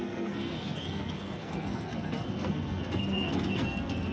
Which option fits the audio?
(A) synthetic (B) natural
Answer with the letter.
A